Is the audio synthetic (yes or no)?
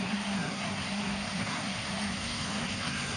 yes